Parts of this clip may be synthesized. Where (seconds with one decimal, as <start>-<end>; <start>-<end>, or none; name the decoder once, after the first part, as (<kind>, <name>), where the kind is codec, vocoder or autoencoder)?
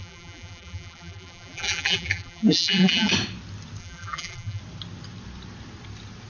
0.0-3.1 (vocoder, BigVGAN v2); 3.8-4.6